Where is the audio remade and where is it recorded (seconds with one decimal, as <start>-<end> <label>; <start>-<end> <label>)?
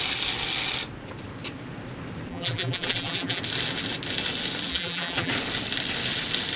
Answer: 0.0-2.3 recorded; 2.3-3.4 remade; 3.4-4.7 recorded; 4.7-5.3 remade; 5.3-6.6 recorded